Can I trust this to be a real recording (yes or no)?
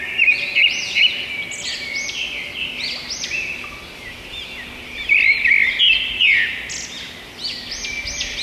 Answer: yes